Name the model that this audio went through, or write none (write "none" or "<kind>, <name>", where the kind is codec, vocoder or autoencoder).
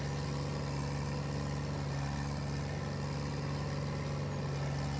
none